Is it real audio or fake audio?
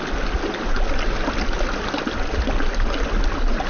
real